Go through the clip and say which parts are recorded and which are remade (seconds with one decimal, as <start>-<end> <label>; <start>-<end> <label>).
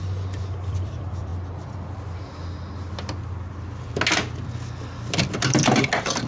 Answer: 0.0-1.3 remade; 1.3-5.1 recorded; 5.1-6.3 remade